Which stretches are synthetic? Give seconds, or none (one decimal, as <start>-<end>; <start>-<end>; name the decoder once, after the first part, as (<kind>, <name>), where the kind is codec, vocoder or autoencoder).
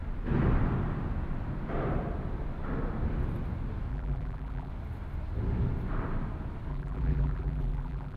3.9-4.7 (vocoder, BigVGAN v2); 6.7-8.2